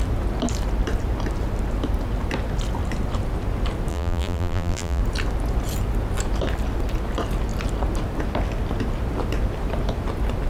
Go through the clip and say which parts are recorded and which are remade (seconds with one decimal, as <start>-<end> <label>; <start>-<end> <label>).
0.0-3.9 recorded; 3.9-5.0 remade; 5.0-10.5 recorded